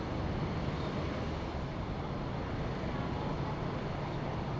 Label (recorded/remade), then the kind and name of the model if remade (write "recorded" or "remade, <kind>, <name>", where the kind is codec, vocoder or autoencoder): recorded